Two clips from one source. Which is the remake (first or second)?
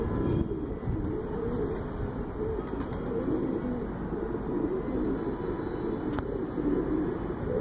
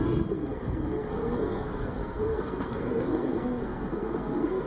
second